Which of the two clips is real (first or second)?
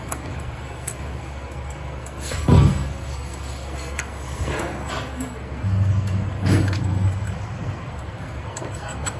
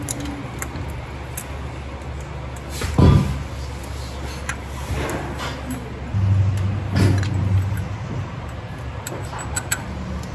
second